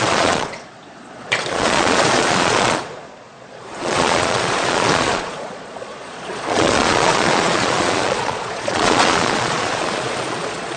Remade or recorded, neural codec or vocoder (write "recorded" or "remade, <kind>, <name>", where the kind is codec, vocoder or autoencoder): remade, vocoder, Vocos